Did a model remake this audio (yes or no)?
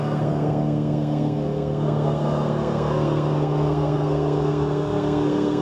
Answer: yes